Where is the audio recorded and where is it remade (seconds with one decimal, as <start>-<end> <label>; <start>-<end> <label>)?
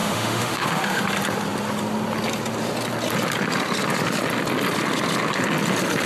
0.0-1.0 remade; 1.0-6.1 recorded